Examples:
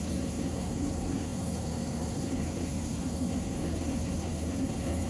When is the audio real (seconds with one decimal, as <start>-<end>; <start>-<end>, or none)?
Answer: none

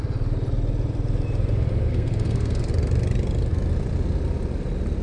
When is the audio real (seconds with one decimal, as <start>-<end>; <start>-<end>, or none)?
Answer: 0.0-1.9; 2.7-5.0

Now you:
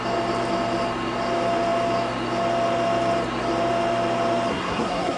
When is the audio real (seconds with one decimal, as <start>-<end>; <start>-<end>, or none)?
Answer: 0.0-4.5

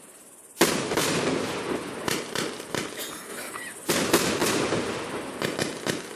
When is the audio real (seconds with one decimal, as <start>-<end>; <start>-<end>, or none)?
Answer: 0.0-6.2

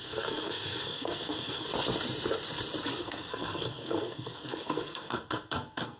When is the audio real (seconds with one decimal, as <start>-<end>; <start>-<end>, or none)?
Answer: 1.7-3.0